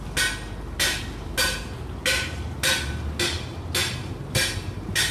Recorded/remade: recorded